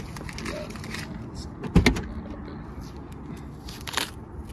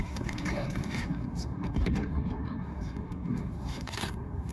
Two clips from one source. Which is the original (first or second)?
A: first